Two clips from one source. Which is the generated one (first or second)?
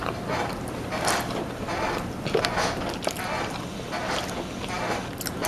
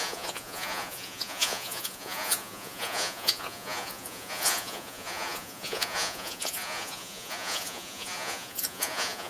second